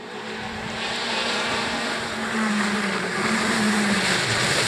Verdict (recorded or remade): remade